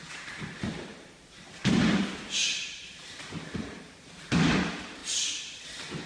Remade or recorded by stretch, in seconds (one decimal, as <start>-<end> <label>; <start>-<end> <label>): 0.0-5.0 remade; 5.0-6.1 recorded